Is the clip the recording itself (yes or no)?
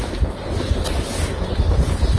yes